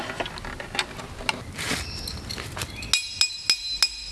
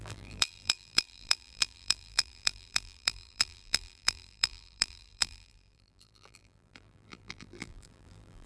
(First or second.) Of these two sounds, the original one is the first